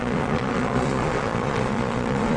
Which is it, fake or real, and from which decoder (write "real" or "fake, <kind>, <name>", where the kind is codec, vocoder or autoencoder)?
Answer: fake, vocoder, Vocos